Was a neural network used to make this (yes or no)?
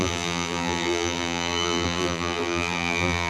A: yes